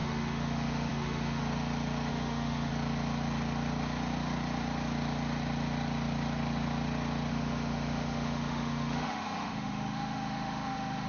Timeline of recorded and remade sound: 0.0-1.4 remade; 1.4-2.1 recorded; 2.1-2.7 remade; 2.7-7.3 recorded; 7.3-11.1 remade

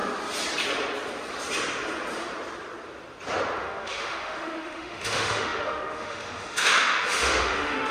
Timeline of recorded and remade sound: 0.0-3.6 recorded; 3.6-7.9 remade

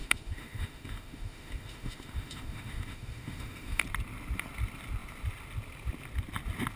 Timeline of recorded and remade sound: 0.0-3.8 remade; 3.8-6.8 recorded

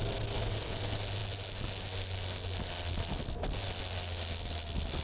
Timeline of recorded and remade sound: 0.0-5.0 recorded

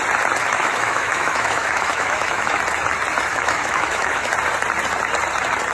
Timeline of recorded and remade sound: 0.0-0.4 recorded; 0.4-2.6 remade; 2.6-3.3 recorded; 3.3-4.3 remade; 4.3-5.7 recorded

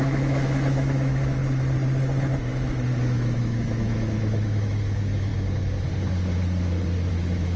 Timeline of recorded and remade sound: 0.0-1.4 remade; 1.4-2.5 recorded; 2.5-5.3 remade; 5.3-7.1 recorded; 7.1-7.6 remade